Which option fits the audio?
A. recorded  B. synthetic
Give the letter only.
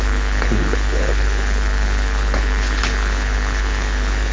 B